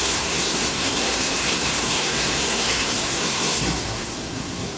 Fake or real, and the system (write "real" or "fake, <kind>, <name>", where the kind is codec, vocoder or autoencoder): fake, codec, SNAC